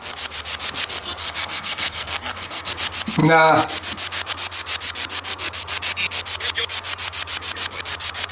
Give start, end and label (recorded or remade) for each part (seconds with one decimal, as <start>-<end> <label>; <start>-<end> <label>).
0.0-1.2 recorded; 1.2-2.7 remade; 2.7-8.3 recorded